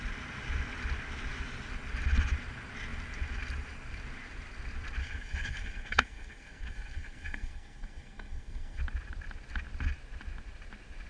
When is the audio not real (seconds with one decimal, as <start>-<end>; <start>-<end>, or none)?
5.0-8.8